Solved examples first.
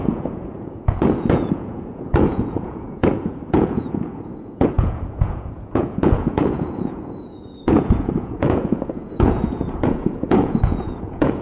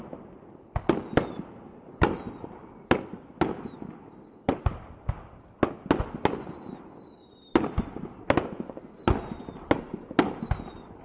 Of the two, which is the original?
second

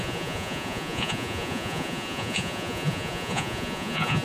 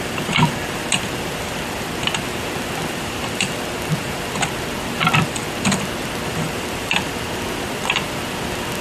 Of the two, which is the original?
second